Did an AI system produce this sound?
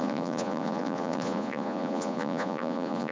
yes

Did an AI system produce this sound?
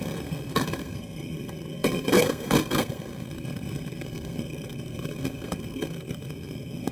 yes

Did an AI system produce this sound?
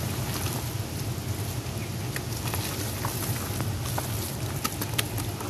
no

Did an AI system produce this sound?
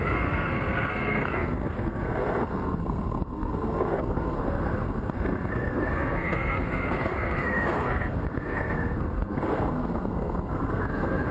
yes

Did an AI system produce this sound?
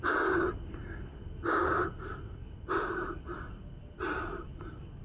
no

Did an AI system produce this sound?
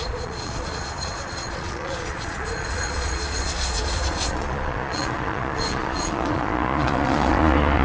yes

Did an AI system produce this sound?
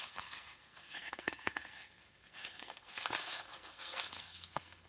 yes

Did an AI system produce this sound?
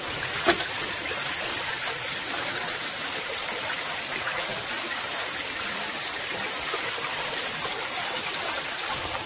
yes